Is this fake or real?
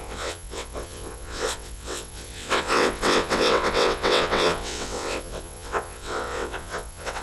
fake